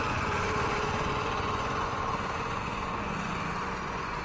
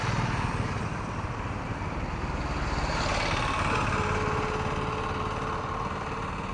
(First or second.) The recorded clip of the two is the second